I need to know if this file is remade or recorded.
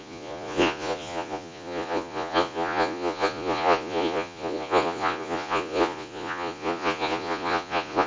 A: remade